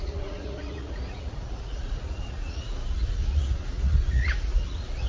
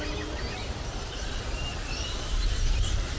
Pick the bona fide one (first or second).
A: second